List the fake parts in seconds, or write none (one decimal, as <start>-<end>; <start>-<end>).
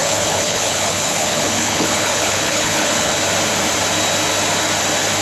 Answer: 0.0-3.1